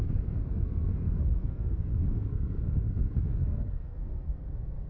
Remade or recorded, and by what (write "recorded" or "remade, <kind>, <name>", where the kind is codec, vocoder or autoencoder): remade, codec, SNAC